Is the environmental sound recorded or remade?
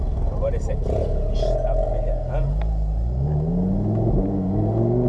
recorded